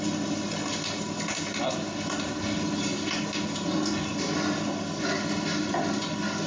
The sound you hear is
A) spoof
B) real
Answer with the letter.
B